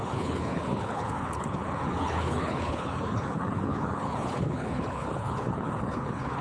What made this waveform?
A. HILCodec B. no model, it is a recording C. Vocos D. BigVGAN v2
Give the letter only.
A